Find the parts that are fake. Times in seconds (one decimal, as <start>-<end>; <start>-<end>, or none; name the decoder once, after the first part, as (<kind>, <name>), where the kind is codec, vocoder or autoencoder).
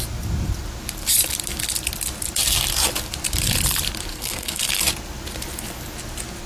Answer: 4.1-4.7 (codec, SNAC)